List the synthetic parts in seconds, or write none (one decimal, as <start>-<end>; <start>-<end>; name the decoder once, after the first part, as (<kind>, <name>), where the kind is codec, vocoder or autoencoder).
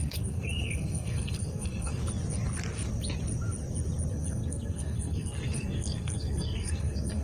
0.0-2.0 (codec, SNAC); 4.1-7.2